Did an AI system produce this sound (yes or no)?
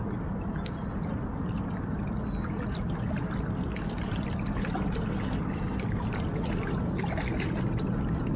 no